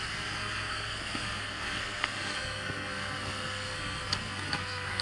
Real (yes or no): no